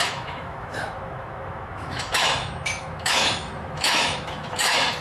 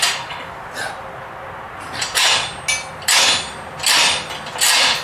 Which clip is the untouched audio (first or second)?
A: second